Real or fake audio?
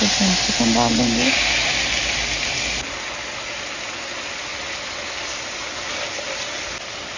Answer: real